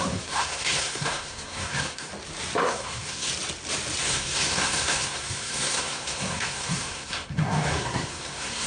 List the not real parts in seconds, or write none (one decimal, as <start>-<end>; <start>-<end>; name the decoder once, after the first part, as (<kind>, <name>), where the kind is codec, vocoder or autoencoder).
0.0-2.1 (codec, SNAC); 2.6-3.3; 4.0-8.7